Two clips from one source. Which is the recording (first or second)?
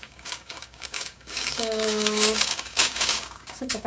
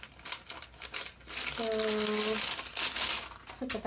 second